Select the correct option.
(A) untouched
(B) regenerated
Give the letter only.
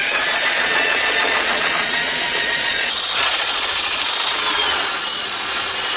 B